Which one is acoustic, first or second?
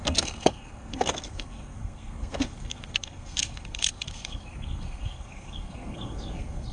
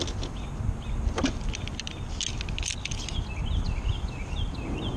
second